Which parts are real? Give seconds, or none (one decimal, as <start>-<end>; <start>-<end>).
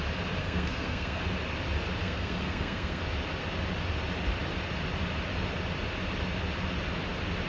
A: 0.0-0.4; 1.2-2.0; 3.0-7.5